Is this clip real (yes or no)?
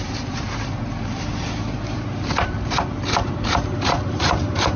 no